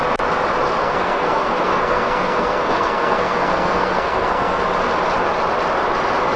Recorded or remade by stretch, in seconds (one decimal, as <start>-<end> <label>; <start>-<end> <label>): 0.0-0.8 recorded; 0.8-4.6 remade; 4.6-6.4 recorded